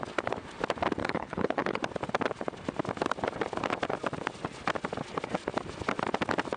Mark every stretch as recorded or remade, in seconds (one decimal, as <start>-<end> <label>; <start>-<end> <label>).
0.0-1.0 recorded; 1.0-1.8 remade; 1.8-6.6 recorded